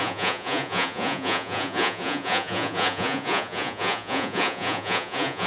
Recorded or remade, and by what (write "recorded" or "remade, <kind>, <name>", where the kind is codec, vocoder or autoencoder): remade, vocoder, Vocos